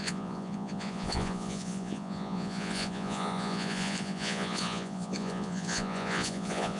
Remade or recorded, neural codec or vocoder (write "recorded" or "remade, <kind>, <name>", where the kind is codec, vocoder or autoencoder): remade, vocoder, Vocos